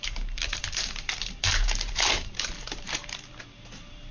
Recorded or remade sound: remade